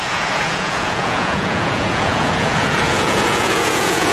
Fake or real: fake